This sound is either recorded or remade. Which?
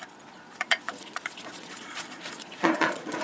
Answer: remade